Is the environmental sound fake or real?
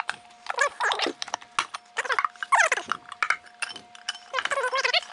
real